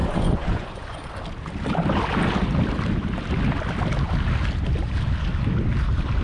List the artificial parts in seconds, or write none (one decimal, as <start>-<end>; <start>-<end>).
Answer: 0.0-1.1